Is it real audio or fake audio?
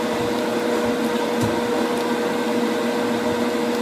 real